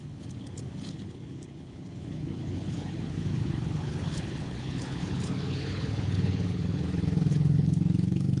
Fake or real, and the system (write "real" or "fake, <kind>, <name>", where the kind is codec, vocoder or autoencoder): fake, codec, HILCodec